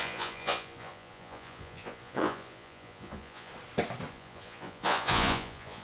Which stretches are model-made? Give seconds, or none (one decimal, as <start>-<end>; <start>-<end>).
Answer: 0.0-3.5; 4.1-5.8

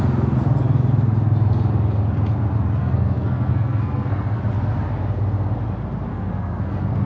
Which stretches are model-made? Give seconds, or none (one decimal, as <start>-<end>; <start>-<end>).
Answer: 2.8-4.4; 6.1-7.1